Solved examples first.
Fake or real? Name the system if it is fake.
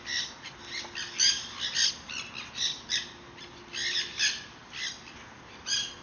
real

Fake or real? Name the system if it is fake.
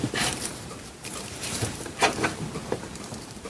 fake, vocoder, BigVGAN v2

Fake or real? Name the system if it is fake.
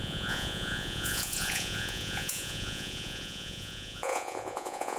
fake, vocoder, Vocos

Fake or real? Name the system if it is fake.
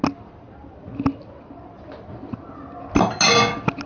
real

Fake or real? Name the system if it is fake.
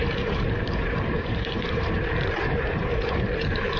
fake, vocoder, BigVGAN v2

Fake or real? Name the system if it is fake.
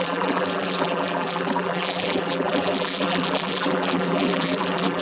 fake, vocoder, BigVGAN v2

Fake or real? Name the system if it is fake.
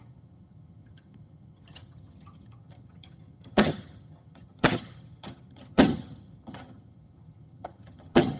fake, vocoder, HiFi-GAN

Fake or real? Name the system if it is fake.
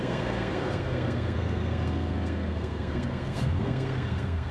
fake, codec, SNAC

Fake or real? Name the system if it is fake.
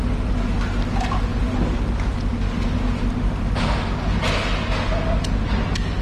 real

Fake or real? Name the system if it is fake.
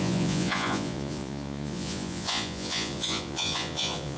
fake, vocoder, Vocos